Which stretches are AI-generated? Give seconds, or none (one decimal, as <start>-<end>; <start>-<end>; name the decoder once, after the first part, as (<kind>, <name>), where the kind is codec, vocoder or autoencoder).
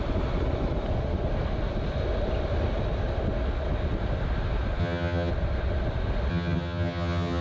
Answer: 4.8-5.3 (vocoder, HiFi-GAN); 6.3-7.4